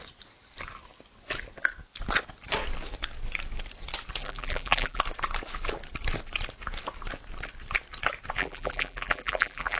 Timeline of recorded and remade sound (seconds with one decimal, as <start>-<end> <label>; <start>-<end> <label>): 0.0-4.2 recorded; 4.2-5.0 remade; 5.0-8.4 recorded; 8.4-9.8 remade